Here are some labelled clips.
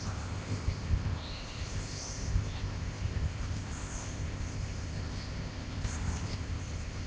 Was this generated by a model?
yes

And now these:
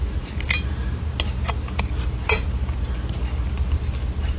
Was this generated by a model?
no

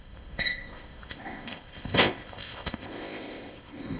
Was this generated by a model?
yes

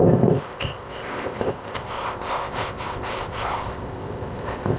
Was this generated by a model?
yes